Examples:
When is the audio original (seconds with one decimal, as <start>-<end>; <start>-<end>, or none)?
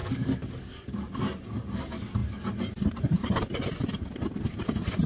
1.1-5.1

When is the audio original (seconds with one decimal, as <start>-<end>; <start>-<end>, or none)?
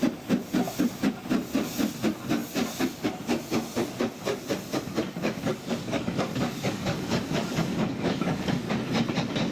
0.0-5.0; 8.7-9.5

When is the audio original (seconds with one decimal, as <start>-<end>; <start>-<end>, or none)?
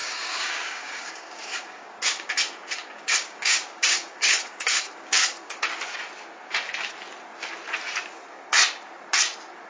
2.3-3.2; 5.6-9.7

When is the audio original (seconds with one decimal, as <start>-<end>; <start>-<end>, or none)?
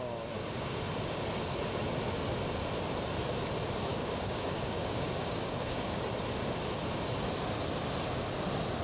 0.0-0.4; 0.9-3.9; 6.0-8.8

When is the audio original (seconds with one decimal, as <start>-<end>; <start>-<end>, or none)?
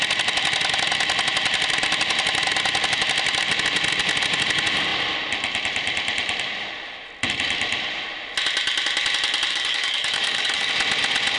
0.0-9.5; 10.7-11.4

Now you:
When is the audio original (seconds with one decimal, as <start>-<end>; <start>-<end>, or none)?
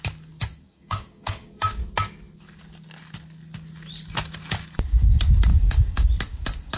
0.0-0.5; 1.8-5.5; 6.1-6.8